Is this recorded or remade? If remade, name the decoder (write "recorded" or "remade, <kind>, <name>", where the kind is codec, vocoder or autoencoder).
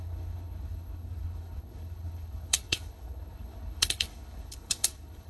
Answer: remade, codec, HILCodec